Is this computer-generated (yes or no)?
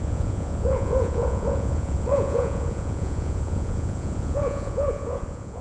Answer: yes